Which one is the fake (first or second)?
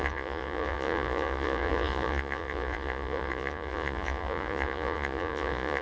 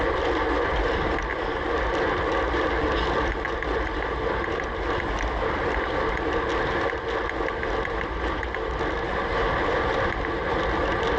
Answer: first